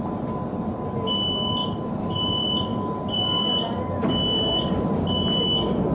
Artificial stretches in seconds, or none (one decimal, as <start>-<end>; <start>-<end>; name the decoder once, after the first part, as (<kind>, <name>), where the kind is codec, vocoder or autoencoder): 1.6-2.3 (vocoder, BigVGAN v2)